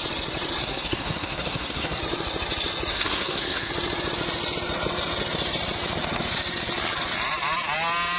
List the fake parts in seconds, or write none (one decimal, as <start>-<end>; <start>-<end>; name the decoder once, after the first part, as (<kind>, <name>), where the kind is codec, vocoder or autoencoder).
0.6-2.0 (codec, SNAC); 2.9-3.7